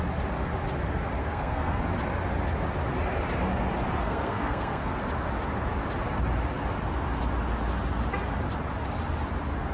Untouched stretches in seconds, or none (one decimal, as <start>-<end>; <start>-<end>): 0.0-1.2; 1.8-4.0; 5.0-9.7